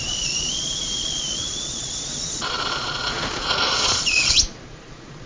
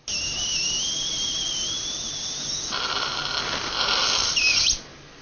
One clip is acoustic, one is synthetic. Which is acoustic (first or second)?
second